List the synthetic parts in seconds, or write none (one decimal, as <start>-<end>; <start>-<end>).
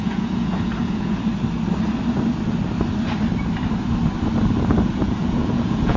0.0-1.3; 4.9-6.0